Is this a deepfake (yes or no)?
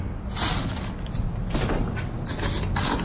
no